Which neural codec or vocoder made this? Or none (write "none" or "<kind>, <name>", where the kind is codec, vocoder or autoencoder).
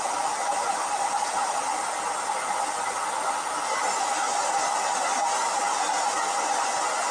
none